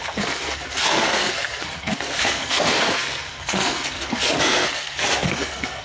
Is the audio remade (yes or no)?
yes